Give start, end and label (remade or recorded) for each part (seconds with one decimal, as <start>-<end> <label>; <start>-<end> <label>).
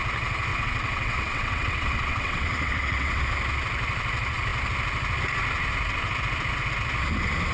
0.0-0.5 recorded; 0.5-3.2 remade; 3.2-7.5 recorded